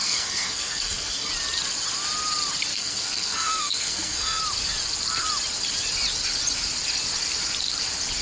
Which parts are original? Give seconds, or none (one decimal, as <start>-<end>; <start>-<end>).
1.3-2.7; 4.4-8.2